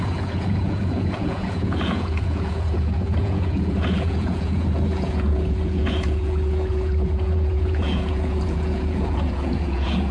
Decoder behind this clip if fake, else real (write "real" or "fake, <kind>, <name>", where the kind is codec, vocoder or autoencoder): fake, vocoder, Vocos